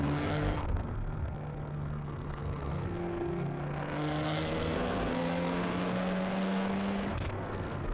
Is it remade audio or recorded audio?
remade